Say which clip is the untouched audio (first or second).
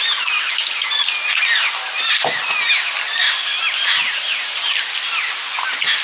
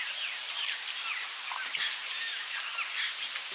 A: first